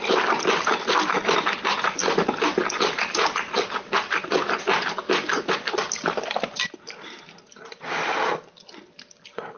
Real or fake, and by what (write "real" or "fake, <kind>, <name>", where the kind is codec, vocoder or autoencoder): real